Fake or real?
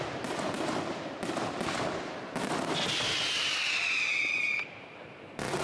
real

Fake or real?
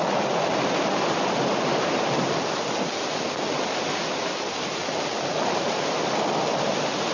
real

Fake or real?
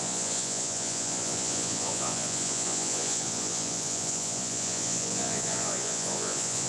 fake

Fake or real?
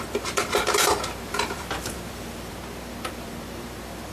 fake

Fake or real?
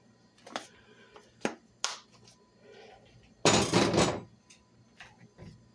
real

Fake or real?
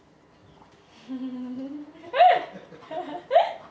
real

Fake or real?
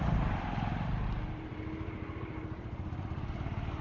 fake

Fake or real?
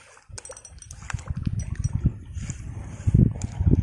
real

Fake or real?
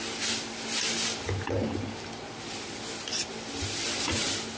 real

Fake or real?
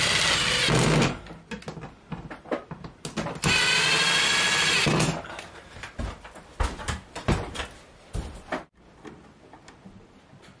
real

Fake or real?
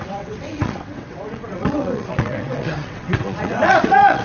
fake